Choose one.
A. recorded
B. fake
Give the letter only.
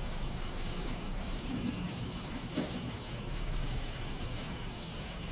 B